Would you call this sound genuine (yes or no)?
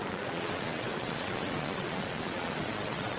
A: no